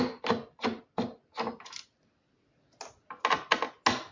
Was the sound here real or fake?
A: real